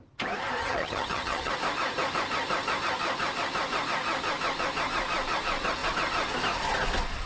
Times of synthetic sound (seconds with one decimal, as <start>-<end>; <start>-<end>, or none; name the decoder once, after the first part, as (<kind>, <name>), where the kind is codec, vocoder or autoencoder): 0.6-1.5 (vocoder, HiFi-GAN)